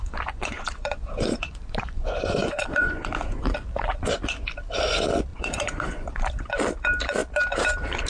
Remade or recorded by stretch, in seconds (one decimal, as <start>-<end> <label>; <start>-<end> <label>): 0.0-3.5 remade; 3.5-5.3 recorded; 5.3-6.3 remade; 6.3-8.1 recorded